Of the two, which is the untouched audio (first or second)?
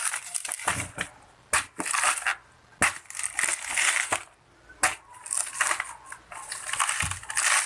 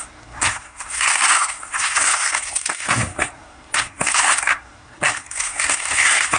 first